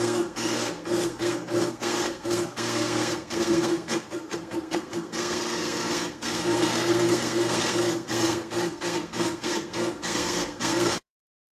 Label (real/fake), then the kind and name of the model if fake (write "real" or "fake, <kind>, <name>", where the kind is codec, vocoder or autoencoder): fake, codec, SNAC